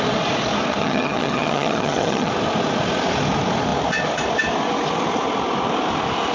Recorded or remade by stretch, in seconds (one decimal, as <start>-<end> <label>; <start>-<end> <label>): 0.0-0.8 recorded; 0.8-2.3 remade; 2.3-6.3 recorded